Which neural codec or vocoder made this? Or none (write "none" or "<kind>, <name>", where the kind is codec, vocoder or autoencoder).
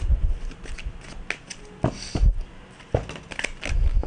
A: none